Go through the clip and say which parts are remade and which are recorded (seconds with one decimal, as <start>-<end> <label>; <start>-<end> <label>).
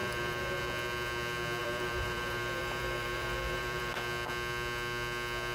0.0-0.6 remade; 0.6-1.6 recorded; 1.6-3.9 remade; 3.9-5.5 recorded